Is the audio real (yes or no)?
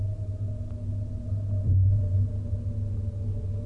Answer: yes